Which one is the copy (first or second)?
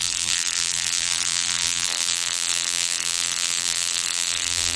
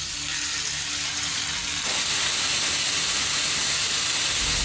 first